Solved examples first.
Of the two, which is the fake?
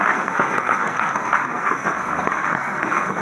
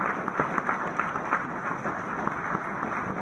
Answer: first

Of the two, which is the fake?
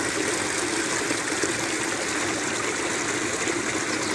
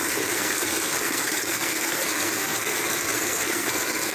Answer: second